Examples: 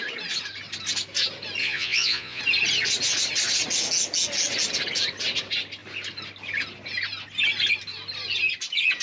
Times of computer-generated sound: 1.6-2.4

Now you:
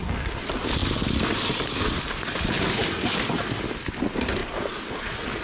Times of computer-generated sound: none

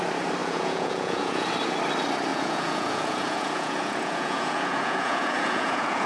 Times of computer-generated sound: 0.4-1.5; 2.3-6.1

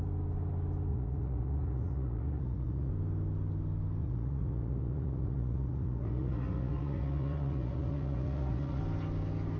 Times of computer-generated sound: 0.9-2.9; 4.0-8.8

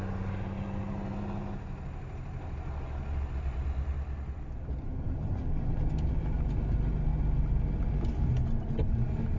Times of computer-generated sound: none